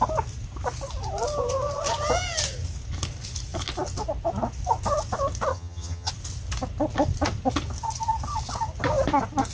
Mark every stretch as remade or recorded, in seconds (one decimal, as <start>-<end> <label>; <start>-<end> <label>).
0.0-5.5 recorded; 5.5-6.1 remade; 6.1-9.5 recorded